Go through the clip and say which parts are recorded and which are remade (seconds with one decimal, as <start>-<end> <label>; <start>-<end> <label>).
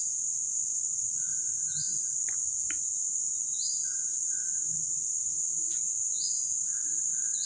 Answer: 0.0-1.3 remade; 1.3-5.0 recorded; 5.0-7.5 remade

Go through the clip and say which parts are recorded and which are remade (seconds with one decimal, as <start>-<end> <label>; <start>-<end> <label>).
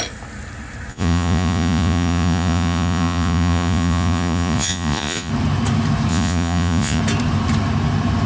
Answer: 0.0-0.9 recorded; 0.9-5.3 remade; 5.3-6.1 recorded; 6.1-7.0 remade; 7.0-8.3 recorded